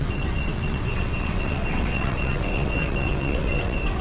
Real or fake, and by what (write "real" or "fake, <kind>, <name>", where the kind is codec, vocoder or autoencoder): fake, vocoder, WaveNeXt